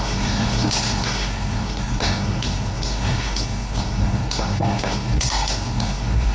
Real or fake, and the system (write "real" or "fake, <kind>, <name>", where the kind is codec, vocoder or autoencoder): fake, codec, SNAC